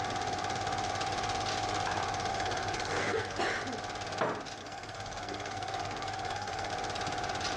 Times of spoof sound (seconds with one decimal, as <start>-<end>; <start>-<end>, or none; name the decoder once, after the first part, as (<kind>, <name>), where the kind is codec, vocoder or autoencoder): 2.3-3.4 (codec, SNAC); 4.6-6.7